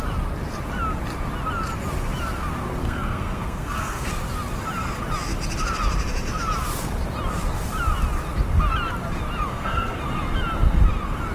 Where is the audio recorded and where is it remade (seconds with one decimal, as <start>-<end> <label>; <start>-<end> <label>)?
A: 0.0-2.8 recorded; 2.8-4.1 remade; 4.1-9.5 recorded; 9.5-10.0 remade; 10.0-11.3 recorded